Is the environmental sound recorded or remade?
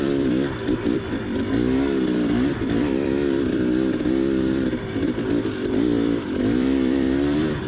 remade